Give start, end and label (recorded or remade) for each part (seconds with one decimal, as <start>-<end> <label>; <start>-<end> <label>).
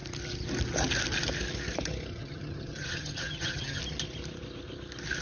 0.0-2.1 recorded; 2.1-3.8 remade; 3.8-5.2 recorded